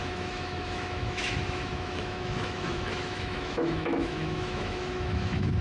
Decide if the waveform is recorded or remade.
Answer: remade